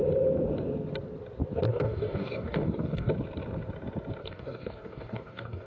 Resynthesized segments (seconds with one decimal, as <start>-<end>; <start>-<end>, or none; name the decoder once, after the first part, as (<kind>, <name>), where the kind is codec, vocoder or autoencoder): 1.7-3.1 (codec, DAC); 4.2-5.7